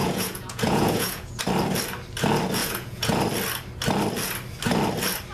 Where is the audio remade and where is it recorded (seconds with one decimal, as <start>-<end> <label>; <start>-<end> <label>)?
0.0-1.4 remade; 1.4-2.6 recorded; 2.6-3.2 remade; 3.2-5.3 recorded